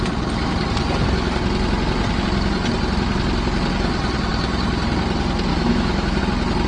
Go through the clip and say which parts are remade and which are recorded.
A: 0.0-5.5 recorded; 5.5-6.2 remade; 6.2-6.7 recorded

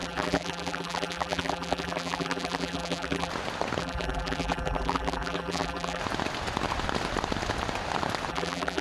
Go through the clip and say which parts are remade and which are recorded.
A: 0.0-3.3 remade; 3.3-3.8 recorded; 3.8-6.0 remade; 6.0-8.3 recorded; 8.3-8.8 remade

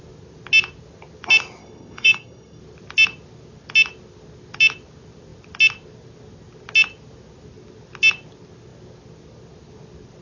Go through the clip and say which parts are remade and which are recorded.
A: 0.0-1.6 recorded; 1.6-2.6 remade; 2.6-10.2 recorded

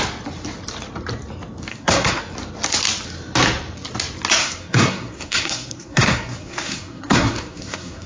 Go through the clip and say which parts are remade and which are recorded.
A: 0.0-1.7 recorded; 1.7-2.2 remade; 2.2-4.4 recorded; 4.4-8.1 remade

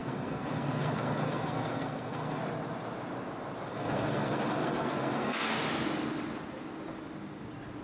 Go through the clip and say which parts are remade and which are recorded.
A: 0.0-2.4 remade; 2.4-3.7 recorded; 3.7-5.4 remade; 5.4-7.8 recorded

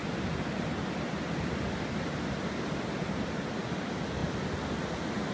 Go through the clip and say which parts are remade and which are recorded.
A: 0.0-5.3 recorded

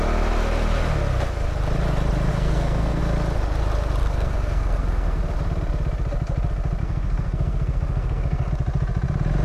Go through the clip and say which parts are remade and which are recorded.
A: 0.0-2.3 recorded; 2.3-3.0 remade; 3.0-4.0 recorded; 4.0-5.2 remade; 5.2-6.8 recorded; 6.8-8.5 remade; 8.5-9.4 recorded

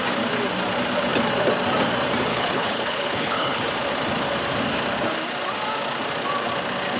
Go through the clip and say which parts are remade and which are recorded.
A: 0.0-2.3 recorded; 2.3-3.6 remade; 3.6-7.0 recorded